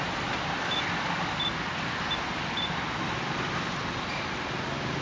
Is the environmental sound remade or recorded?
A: recorded